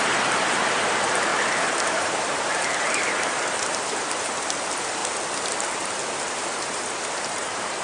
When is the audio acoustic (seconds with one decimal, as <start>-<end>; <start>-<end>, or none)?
5.0-6.3